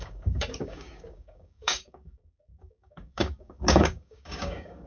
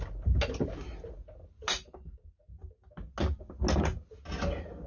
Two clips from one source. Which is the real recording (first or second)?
second